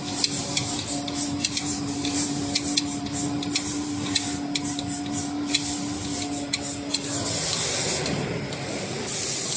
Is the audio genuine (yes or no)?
yes